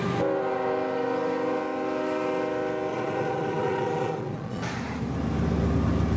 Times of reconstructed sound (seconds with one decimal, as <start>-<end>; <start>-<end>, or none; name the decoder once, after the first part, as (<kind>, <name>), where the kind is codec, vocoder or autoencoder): 2.9-4.6 (vocoder, Vocos)

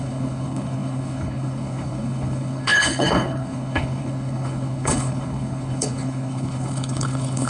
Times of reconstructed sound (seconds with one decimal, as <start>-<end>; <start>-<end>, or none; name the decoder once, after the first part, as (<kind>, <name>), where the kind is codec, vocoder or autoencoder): 0.0-7.5 (codec, HILCodec)

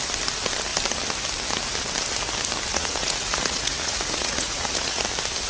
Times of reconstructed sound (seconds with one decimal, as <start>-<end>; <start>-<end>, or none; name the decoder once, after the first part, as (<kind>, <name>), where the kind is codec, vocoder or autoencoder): 2.7-5.0 (vocoder, Vocos)

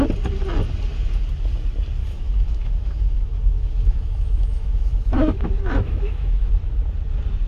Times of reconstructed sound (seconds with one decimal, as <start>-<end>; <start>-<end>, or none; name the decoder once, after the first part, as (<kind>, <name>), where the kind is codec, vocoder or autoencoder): 2.0-6.5 (autoencoder, DAC-VAE)

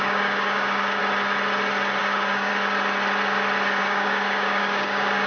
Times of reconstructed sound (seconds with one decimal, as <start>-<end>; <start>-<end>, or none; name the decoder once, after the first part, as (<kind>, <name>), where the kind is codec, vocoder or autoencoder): 0.0-1.0 (codec, DAC); 2.0-2.5; 3.8-5.3

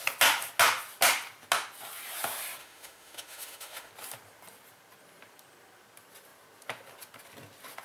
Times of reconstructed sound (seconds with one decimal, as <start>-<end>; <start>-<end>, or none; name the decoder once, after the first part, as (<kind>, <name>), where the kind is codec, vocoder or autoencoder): 2.6-3.9 (autoencoder, DAC-VAE)

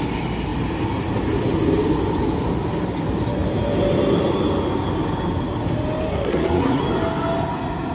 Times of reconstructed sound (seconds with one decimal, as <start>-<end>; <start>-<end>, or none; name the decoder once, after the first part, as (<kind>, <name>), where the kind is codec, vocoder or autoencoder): 6.1-6.8 (codec, SNAC)

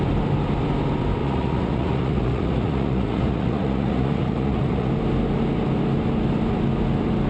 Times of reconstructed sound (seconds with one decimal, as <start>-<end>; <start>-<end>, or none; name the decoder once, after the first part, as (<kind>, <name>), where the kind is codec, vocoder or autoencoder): 1.2-4.9 (vocoder, Vocos)